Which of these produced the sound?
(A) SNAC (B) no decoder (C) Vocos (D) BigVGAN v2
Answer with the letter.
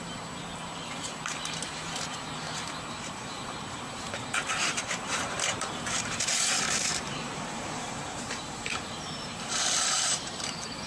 D